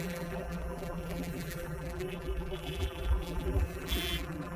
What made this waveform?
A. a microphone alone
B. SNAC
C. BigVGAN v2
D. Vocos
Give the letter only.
C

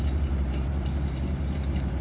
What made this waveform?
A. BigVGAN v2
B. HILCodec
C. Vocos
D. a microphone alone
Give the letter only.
A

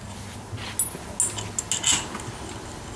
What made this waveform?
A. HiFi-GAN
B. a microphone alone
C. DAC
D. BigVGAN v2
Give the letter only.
B